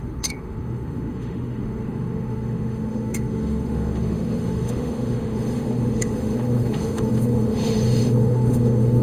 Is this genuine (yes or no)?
no